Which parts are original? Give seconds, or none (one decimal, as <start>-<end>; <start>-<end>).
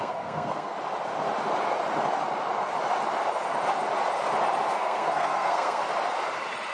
0.7-4.7; 5.8-6.7